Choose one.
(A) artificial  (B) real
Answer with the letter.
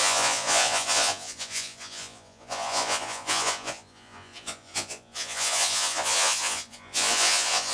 A